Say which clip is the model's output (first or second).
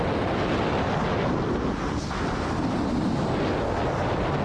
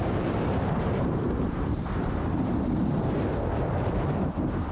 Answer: second